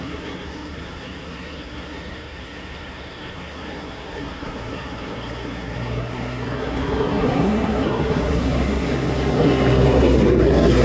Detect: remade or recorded remade